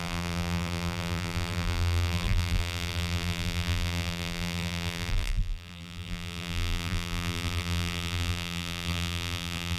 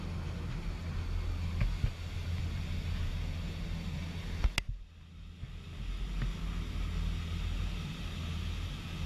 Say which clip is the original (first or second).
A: second